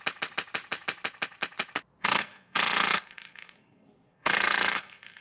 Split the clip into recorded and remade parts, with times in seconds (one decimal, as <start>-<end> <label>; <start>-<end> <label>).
0.0-2.0 recorded; 2.0-5.2 remade